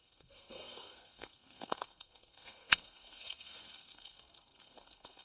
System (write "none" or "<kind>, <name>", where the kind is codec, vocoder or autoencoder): codec, SNAC